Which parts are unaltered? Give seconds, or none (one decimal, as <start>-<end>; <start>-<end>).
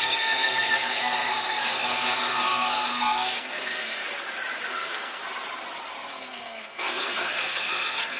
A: 4.0-4.7; 5.2-6.1